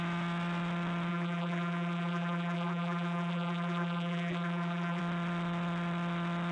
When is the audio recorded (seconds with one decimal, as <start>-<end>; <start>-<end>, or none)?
0.0-1.1; 5.0-6.5

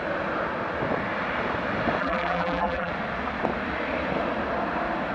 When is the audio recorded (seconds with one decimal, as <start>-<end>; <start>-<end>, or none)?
0.0-2.0; 2.9-5.1

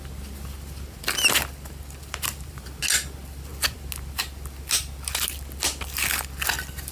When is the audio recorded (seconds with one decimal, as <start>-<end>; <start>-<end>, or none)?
0.0-2.0; 2.8-6.9

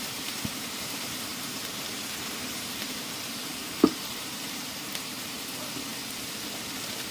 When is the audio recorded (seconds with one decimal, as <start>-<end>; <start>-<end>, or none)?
5.9-7.1